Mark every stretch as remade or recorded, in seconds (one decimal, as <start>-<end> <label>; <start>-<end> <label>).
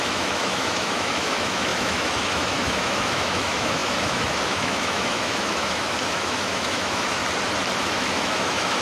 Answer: 0.0-7.2 remade; 7.2-7.8 recorded; 7.8-8.8 remade